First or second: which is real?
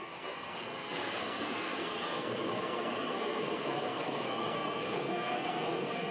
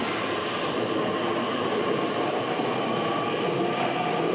second